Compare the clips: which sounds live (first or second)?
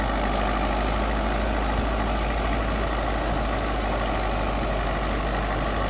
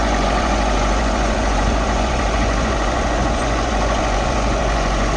first